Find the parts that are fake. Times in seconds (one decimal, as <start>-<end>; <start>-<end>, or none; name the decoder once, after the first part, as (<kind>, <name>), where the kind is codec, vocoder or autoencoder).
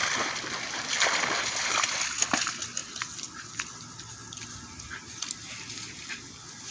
none